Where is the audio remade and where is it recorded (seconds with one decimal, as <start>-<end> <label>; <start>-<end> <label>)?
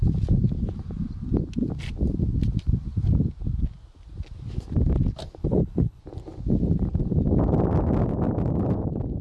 0.0-5.4 recorded; 5.4-6.0 remade; 6.0-9.2 recorded